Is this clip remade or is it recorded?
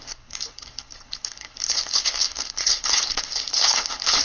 remade